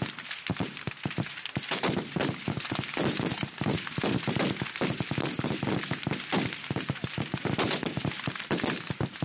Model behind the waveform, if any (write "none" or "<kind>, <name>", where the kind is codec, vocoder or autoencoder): none